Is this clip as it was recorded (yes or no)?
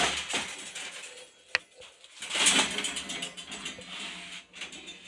yes